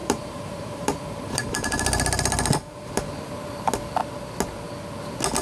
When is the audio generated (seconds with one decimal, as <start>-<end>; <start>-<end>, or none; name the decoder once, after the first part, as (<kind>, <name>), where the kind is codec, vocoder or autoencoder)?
0.0-3.2 (vocoder, BigVGAN v2)